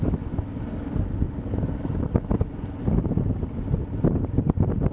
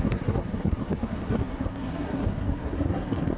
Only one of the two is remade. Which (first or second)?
second